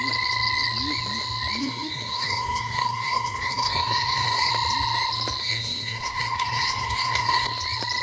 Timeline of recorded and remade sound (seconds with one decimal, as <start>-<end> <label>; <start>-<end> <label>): 0.0-1.6 recorded; 1.6-4.5 remade; 4.5-5.4 recorded; 5.4-7.5 remade; 7.5-8.0 recorded

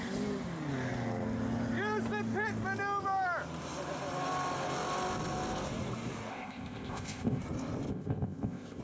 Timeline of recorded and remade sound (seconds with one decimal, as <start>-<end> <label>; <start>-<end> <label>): 0.0-6.3 recorded; 6.3-7.4 remade; 7.4-7.9 recorded; 7.9-8.8 remade

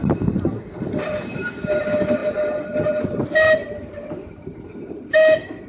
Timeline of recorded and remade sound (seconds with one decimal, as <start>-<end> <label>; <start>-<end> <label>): 0.0-5.7 recorded

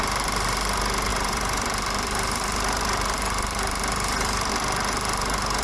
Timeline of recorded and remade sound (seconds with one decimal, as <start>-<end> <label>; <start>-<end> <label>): 0.0-1.1 recorded; 1.1-4.5 remade; 4.5-5.6 recorded